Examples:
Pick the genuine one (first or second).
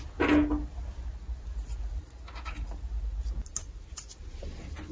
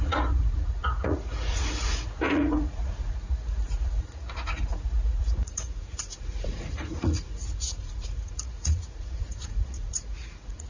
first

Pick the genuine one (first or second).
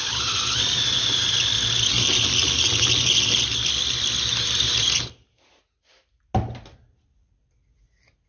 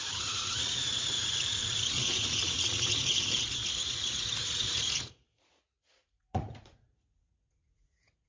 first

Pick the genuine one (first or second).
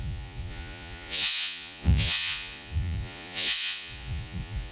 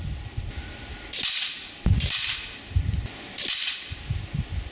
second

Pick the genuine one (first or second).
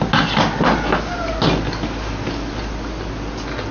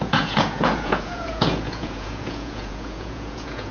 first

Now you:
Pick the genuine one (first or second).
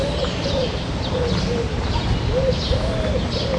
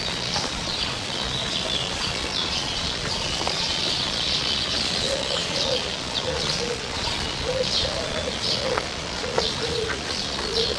first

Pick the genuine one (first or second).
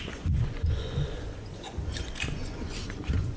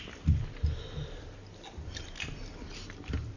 second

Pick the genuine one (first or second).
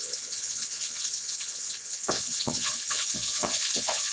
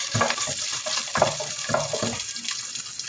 second